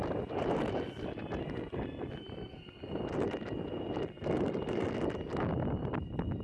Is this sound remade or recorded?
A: recorded